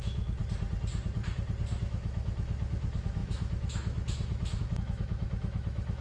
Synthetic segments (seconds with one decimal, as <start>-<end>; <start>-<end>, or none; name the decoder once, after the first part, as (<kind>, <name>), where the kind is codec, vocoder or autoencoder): 0.0-0.4 (autoencoder, DAC-VAE); 1.8-6.0